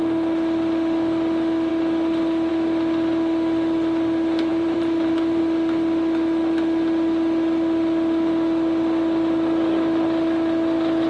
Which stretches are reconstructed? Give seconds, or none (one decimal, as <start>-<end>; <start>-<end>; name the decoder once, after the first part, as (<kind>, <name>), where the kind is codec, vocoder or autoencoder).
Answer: 4.5-5.4 (vocoder, BigVGAN v2)